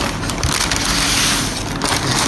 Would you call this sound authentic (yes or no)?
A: yes